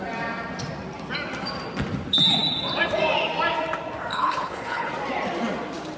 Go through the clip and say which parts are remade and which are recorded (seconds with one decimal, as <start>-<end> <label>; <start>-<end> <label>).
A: 0.0-4.1 recorded; 4.1-4.9 remade; 4.9-6.0 recorded

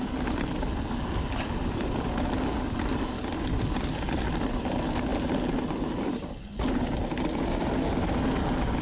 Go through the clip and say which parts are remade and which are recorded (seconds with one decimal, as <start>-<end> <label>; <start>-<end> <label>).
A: 0.0-8.8 recorded

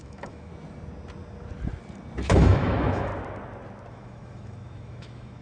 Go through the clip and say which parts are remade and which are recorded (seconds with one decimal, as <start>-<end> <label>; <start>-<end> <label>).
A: 0.0-0.5 remade; 0.5-2.3 recorded; 2.3-3.1 remade; 3.1-3.9 recorded; 3.9-5.4 remade